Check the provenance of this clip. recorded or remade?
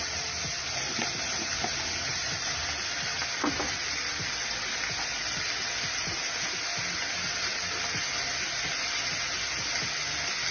recorded